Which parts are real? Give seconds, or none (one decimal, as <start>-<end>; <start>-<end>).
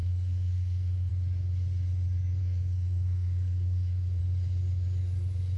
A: 1.1-2.4; 4.2-5.6